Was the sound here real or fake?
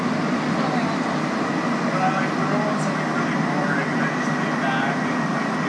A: real